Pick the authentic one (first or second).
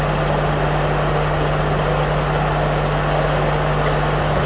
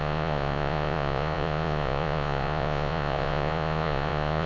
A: first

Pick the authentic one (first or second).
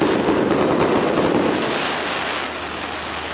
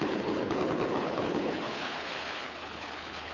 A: first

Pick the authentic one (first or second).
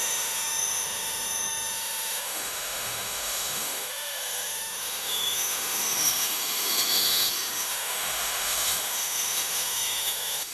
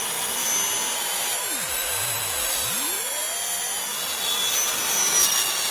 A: second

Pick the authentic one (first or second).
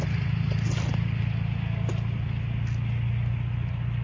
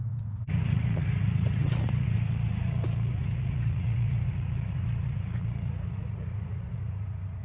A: first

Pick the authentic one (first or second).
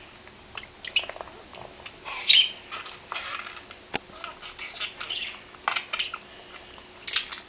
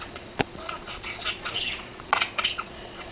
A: first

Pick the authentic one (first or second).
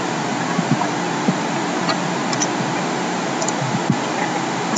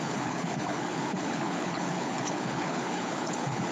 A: first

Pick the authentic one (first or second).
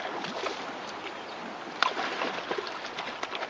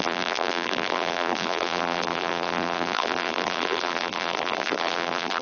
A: first